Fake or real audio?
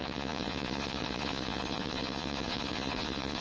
fake